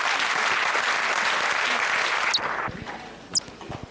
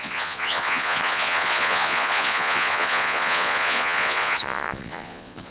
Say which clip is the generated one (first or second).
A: second